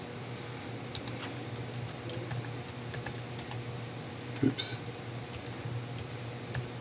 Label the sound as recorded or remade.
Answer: recorded